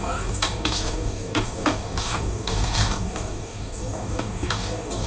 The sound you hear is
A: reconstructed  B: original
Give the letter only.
A